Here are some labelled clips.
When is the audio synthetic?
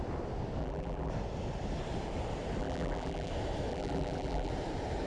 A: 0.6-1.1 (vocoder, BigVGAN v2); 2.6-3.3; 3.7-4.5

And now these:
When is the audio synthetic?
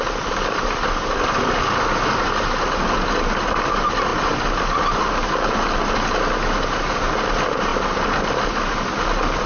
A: 4.1-5.0 (vocoder, BigVGAN v2); 7.7-8.5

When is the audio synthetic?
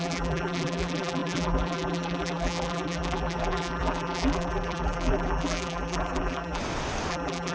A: 0.0-6.6 (vocoder, BigVGAN v2); 7.1-7.5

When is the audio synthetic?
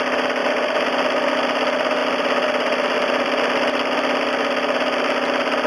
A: 0.0-0.4 (vocoder, BigVGAN v2); 1.3-5.7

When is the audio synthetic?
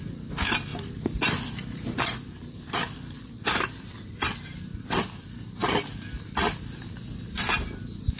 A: 0.7-5.0 (vocoder, BigVGAN v2)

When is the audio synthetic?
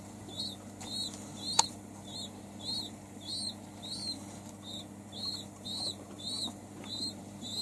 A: 0.0-3.3 (vocoder, BigVGAN v2); 5.2-7.6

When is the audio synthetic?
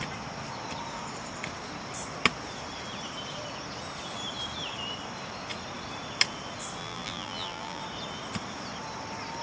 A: 6.8-7.8 (vocoder, BigVGAN v2)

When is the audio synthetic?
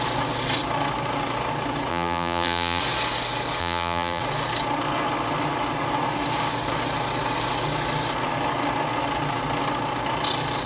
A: 1.9-2.8 (vocoder, BigVGAN v2); 3.6-4.2